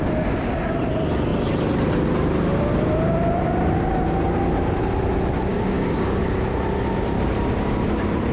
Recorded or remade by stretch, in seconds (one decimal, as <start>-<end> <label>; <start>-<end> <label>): 0.0-5.5 recorded; 5.5-6.2 remade; 6.2-8.3 recorded